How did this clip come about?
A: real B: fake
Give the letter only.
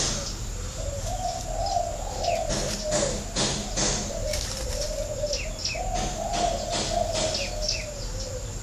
A